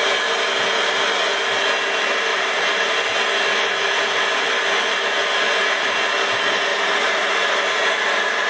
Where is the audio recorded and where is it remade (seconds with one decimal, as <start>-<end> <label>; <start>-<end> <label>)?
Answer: 0.0-2.3 recorded; 2.3-3.0 remade; 3.0-6.7 recorded; 6.7-7.3 remade; 7.3-8.5 recorded